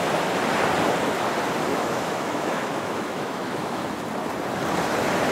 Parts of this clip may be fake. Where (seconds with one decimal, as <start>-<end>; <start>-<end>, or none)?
1.7-3.9